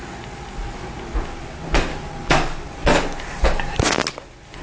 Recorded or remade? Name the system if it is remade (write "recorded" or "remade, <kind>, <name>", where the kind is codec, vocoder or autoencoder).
recorded